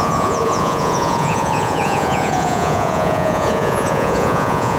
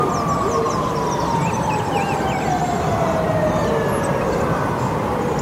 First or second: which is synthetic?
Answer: first